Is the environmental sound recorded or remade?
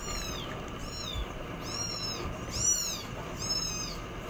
recorded